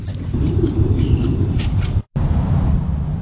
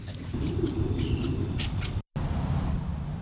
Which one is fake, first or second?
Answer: first